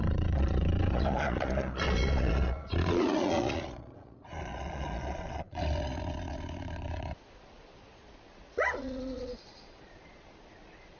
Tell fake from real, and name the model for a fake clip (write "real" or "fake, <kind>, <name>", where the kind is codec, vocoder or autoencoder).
fake, vocoder, Vocos